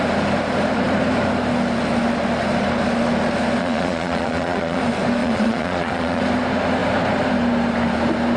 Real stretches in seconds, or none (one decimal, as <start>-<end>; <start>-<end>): 0.0-3.6; 4.8-5.2; 6.2-8.4